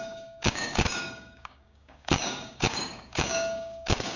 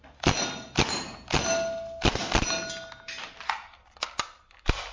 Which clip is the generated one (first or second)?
first